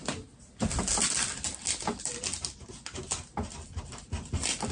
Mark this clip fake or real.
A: real